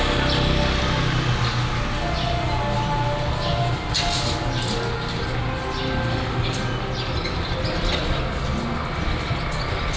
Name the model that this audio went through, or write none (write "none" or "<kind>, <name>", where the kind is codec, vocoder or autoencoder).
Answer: none